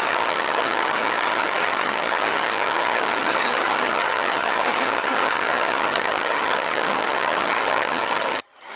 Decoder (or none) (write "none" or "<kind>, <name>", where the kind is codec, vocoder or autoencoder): vocoder, HiFi-GAN